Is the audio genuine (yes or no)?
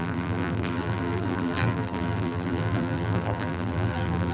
no